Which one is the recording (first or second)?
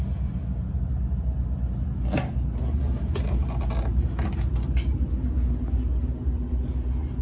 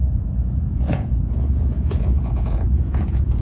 first